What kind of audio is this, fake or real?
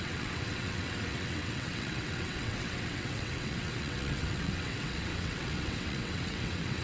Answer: fake